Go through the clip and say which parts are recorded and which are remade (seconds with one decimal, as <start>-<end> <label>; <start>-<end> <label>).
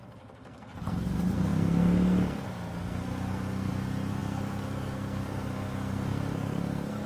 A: 0.0-7.1 remade